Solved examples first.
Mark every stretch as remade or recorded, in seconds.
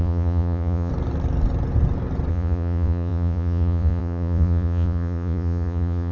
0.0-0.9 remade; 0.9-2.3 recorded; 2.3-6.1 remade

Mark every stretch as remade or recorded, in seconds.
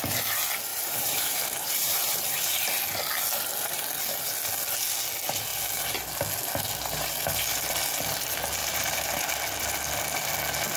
0.0-0.7 recorded; 0.7-2.8 remade; 2.8-8.6 recorded; 8.6-9.2 remade; 9.2-10.8 recorded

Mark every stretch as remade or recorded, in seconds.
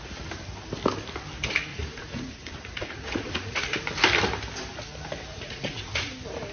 0.0-1.7 recorded; 1.7-3.8 remade; 3.8-5.3 recorded; 5.3-6.1 remade; 6.1-6.5 recorded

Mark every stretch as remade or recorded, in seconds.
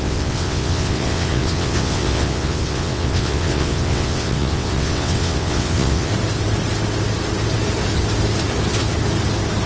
0.0-6.1 remade; 6.1-9.7 recorded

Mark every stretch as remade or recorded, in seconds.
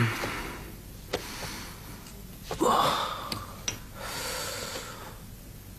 0.0-5.8 recorded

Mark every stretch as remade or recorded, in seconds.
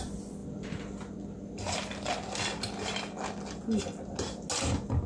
0.0-5.1 recorded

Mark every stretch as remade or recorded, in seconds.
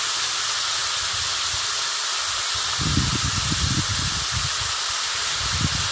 0.0-5.9 recorded